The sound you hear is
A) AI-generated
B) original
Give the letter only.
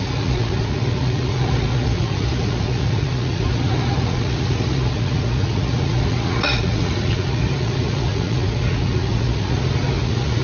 A